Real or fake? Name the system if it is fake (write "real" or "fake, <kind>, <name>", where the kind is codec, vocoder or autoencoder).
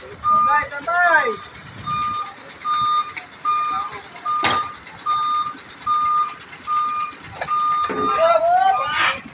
real